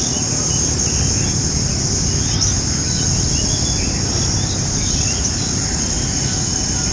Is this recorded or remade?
recorded